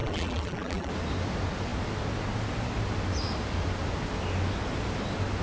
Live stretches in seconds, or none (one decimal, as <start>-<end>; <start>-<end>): 0.9-5.4